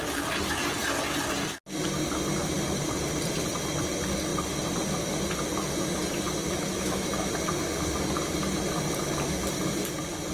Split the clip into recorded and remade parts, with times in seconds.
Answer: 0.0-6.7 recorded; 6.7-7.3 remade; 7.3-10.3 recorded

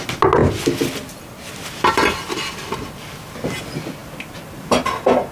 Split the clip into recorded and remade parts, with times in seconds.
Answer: 0.0-5.3 recorded

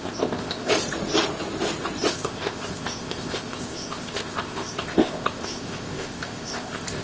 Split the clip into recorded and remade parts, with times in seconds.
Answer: 0.0-0.7 remade; 0.7-2.1 recorded; 2.1-7.0 remade

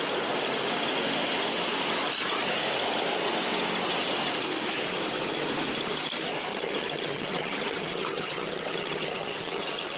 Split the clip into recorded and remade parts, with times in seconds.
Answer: 0.0-6.5 recorded; 6.5-10.0 remade

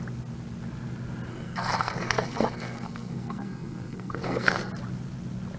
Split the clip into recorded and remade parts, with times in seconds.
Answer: 0.0-1.3 recorded; 1.3-4.7 remade; 4.7-5.6 recorded

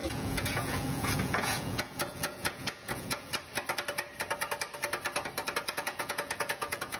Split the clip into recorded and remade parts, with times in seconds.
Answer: 0.0-3.3 remade; 3.3-5.7 recorded; 5.7-7.0 remade

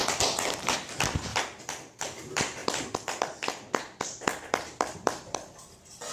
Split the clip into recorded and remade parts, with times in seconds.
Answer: 0.0-0.6 recorded; 0.6-1.3 remade; 1.3-2.0 recorded; 2.0-6.1 remade